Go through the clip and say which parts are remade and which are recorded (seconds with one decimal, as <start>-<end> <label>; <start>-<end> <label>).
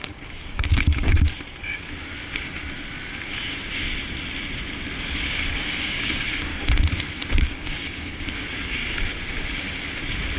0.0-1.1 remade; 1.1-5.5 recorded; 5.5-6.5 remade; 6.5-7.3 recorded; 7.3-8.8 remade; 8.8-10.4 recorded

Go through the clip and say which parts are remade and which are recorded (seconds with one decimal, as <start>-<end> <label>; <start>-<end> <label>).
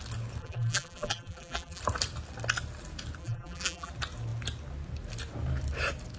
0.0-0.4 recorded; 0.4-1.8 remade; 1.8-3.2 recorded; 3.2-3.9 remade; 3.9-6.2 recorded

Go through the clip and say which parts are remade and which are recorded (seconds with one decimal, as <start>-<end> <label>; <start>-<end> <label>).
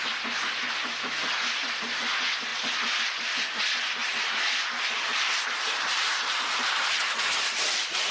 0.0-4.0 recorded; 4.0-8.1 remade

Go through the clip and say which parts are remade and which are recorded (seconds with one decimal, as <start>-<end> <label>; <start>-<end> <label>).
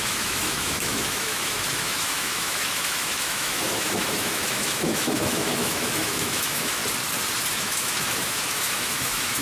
0.0-6.8 remade; 6.8-7.5 recorded; 7.5-9.4 remade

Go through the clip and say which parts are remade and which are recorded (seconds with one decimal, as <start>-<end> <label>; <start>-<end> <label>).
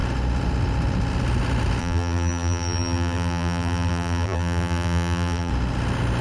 0.0-1.8 recorded; 1.8-5.5 remade; 5.5-6.2 recorded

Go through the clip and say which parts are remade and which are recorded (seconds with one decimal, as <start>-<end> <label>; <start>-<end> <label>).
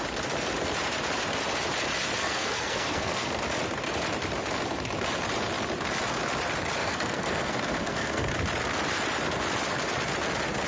0.0-2.2 recorded; 2.2-3.4 remade; 3.4-6.8 recorded; 6.8-8.3 remade; 8.3-10.7 recorded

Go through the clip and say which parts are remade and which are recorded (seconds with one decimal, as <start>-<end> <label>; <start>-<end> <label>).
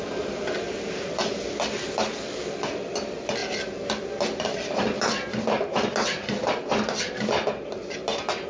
0.0-8.5 recorded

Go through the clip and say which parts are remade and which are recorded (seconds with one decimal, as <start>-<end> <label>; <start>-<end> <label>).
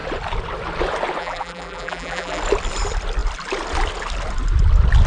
0.0-1.2 recorded; 1.2-2.4 remade; 2.4-5.1 recorded